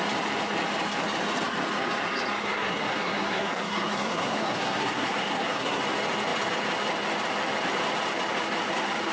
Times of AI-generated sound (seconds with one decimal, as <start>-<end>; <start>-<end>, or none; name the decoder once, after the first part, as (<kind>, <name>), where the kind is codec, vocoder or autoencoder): 2.4-5.8 (codec, SNAC)